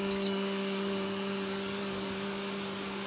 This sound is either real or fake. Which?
fake